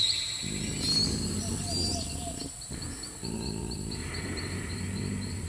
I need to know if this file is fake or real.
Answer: real